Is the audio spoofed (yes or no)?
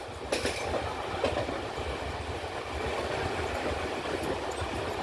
no